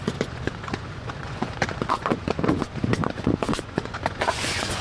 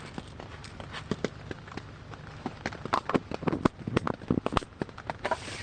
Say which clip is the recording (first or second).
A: second